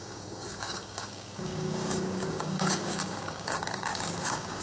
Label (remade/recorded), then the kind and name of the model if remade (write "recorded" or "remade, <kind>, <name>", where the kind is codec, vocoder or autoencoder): remade, codec, DAC